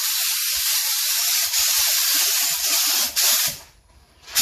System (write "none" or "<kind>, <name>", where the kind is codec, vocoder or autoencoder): vocoder, BigVGAN v2